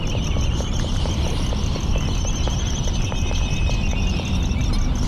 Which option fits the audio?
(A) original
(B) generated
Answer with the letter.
B